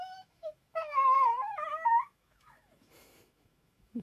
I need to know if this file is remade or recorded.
remade